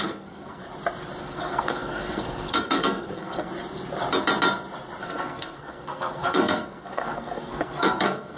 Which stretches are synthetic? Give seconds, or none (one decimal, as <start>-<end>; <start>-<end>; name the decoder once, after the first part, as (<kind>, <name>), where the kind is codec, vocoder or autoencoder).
0.0-0.6 (codec, SNAC); 1.2-3.5; 5.0-8.4